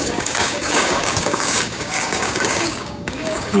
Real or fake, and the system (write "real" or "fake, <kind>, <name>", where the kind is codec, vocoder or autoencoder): fake, codec, DAC